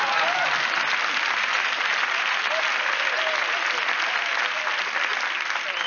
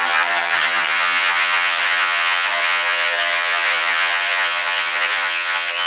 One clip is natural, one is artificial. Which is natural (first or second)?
first